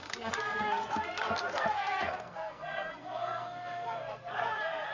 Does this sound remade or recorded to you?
remade